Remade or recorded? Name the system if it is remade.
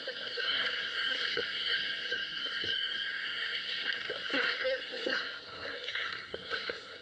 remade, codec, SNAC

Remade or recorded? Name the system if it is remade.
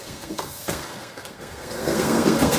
remade, codec, SNAC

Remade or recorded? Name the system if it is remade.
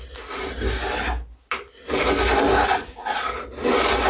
recorded